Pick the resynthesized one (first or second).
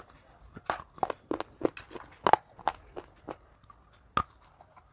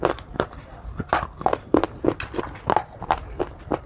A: second